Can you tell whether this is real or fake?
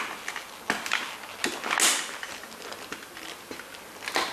real